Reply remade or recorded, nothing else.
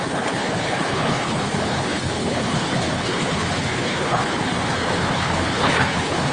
remade